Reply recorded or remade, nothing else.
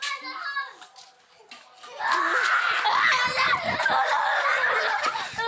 recorded